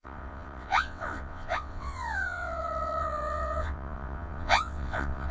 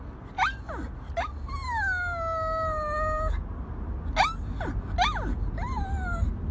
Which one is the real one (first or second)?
second